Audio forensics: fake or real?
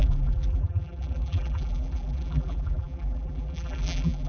fake